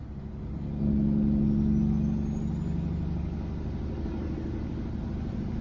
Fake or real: real